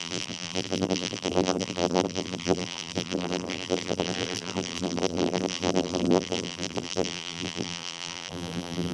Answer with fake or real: fake